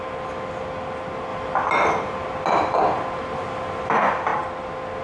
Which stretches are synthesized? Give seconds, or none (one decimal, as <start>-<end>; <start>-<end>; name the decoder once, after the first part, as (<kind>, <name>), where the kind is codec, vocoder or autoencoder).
none